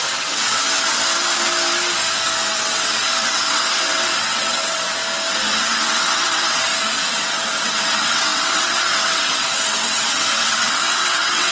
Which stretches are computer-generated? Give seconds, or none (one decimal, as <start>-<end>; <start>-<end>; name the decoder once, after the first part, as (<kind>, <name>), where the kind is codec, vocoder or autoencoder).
0.0-0.6 (vocoder, WaveNeXt); 2.5-5.0; 5.6-6.7; 7.2-11.5